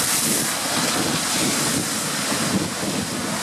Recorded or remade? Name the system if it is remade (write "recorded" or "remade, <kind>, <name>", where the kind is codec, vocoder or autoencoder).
recorded